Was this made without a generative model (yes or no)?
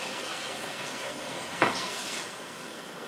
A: no